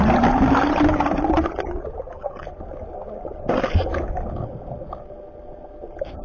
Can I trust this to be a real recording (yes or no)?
yes